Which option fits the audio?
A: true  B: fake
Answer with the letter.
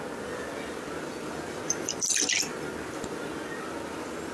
A